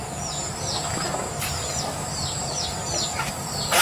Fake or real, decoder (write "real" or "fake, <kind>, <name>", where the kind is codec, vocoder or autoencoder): fake, vocoder, BigVGAN v2